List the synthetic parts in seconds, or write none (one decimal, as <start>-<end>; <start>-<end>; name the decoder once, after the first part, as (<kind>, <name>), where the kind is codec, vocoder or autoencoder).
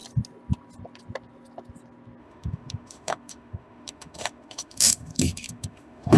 2.2-6.2 (autoencoder, DAC-VAE)